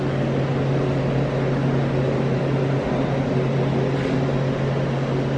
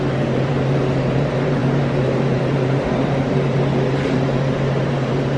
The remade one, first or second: second